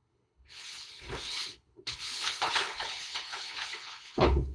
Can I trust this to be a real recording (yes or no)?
no